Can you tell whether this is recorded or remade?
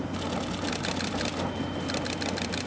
recorded